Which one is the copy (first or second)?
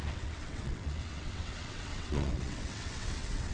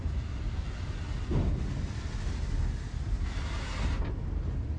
first